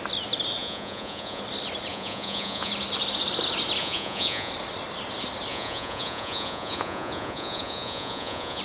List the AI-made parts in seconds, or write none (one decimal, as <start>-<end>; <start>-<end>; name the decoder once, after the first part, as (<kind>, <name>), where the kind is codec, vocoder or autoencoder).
0.6-1.4 (vocoder, Vocos); 1.9-2.7; 3.8-4.5; 5.5-8.6